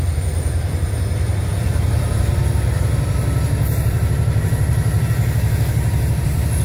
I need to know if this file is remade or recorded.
remade